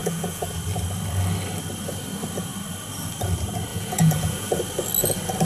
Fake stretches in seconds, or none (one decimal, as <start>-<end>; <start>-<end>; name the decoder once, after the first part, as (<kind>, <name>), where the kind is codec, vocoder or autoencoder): 0.0-0.5 (vocoder, Vocos); 3.7-4.6